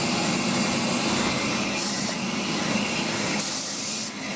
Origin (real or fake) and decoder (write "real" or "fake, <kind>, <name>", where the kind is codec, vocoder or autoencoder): real